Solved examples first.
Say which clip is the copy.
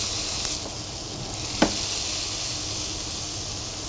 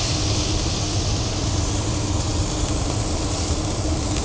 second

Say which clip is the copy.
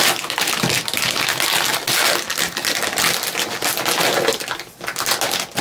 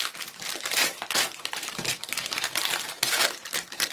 second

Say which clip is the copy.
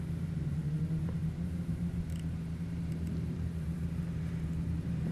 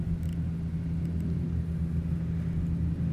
first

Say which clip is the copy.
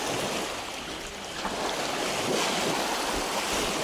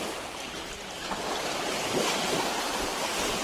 second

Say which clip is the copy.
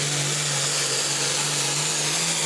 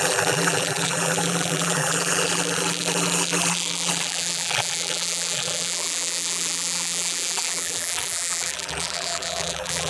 second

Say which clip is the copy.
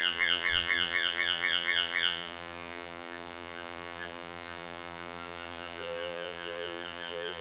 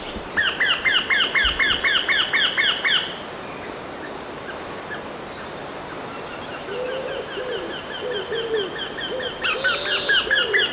first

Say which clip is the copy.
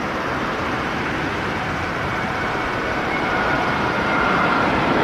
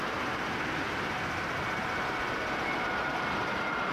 first